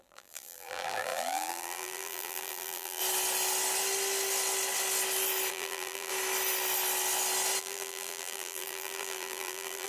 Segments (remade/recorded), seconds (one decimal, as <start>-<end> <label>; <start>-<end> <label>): 0.0-3.0 remade; 3.0-5.5 recorded; 5.5-6.1 remade; 6.1-7.6 recorded; 7.6-9.9 remade